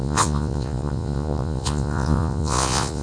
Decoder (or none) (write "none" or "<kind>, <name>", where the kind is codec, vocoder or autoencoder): vocoder, Vocos